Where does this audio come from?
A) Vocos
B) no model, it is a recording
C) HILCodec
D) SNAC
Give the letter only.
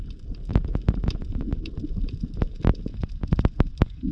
B